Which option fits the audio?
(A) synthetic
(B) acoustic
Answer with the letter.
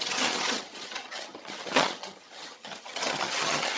A